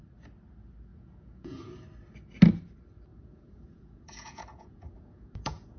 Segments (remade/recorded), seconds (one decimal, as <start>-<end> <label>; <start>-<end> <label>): 0.0-0.9 recorded; 0.9-1.8 remade; 1.8-3.1 recorded; 3.1-5.8 remade